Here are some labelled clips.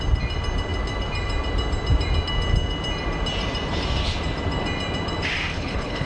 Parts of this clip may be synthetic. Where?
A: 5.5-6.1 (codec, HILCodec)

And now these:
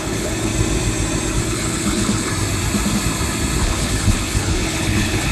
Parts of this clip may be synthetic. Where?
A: 0.0-0.5 (codec, HILCodec); 1.4-2.3; 3.6-5.3

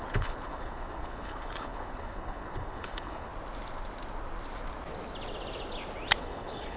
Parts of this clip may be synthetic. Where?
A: 0.0-3.3 (codec, HILCodec); 6.2-6.8

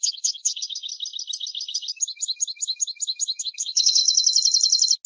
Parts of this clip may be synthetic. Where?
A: 0.0-0.9 (codec, HILCodec); 3.4-4.0

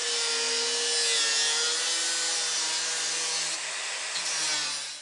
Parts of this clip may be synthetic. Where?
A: none

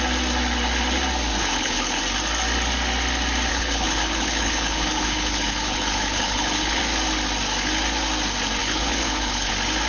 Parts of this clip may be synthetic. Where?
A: 1.4-2.0 (codec, HILCodec); 3.5-6.8; 8.6-9.5

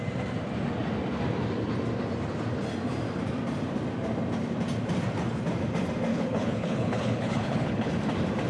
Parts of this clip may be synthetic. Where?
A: 6.1-7.9 (codec, HILCodec)